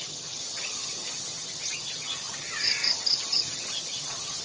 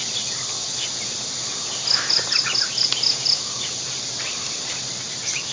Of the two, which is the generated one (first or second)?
first